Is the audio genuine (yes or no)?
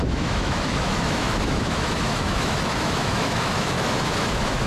no